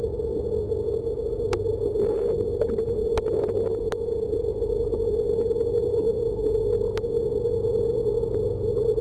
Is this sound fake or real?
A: real